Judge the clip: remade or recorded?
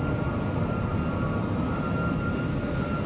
recorded